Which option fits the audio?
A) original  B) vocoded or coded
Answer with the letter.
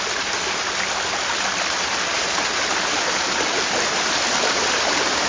A